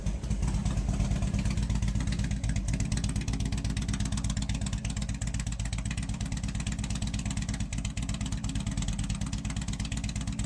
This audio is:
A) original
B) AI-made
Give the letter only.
A